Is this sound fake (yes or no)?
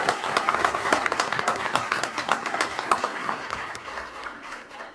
yes